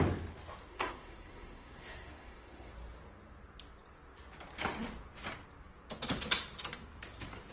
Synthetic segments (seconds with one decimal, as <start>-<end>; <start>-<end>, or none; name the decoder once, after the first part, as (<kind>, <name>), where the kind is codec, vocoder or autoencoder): 0.7-2.7 (codec, SNAC)